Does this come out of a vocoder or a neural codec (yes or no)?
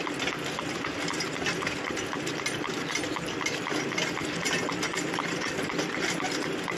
no